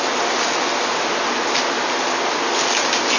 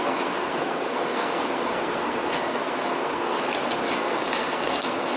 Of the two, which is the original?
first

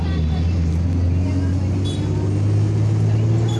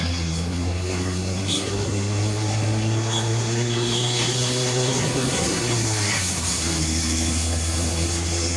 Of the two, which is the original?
first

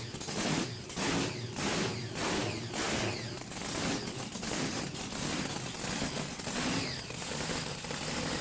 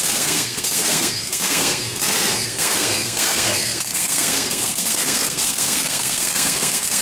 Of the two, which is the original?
first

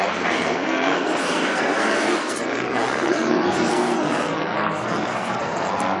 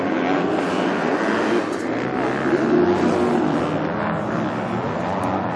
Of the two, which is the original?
second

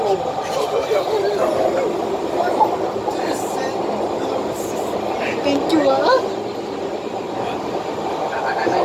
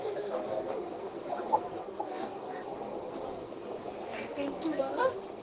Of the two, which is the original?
first